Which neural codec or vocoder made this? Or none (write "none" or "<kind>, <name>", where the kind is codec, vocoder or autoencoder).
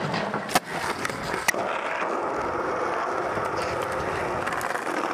none